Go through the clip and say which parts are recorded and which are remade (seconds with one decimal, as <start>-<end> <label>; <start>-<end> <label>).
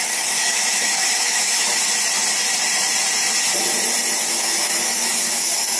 0.0-1.7 remade; 1.7-4.3 recorded; 4.3-5.8 remade